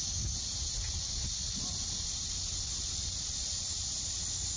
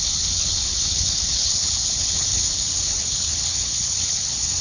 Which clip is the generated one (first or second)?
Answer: second